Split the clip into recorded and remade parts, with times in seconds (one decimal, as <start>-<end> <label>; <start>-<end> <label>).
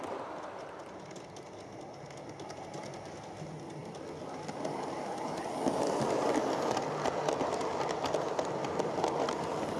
0.0-9.8 recorded